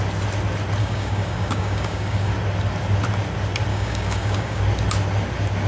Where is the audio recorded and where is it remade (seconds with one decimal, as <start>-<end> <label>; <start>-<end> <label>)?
0.0-0.8 recorded; 0.8-2.3 remade; 2.3-3.7 recorded; 3.7-4.6 remade; 4.6-5.7 recorded